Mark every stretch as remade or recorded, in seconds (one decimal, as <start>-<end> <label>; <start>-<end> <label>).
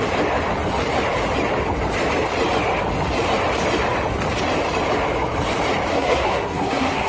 0.0-5.9 recorded; 5.9-7.1 remade